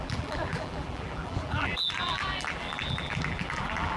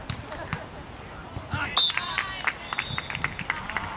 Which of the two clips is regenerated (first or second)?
first